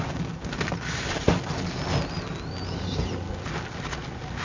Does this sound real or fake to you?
real